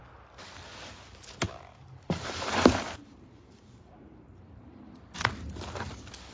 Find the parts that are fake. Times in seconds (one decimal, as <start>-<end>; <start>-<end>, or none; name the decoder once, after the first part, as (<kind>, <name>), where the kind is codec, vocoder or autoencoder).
1.8-4.7 (vocoder, BigVGAN v2)